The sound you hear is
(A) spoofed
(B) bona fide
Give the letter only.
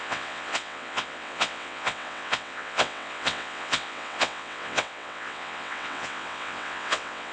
A